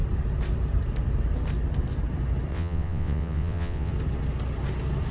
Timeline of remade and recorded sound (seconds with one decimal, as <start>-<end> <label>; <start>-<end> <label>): 0.0-2.5 recorded; 2.5-3.9 remade; 3.9-5.1 recorded